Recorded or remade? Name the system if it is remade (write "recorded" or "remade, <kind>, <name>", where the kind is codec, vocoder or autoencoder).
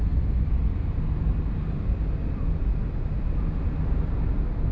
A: recorded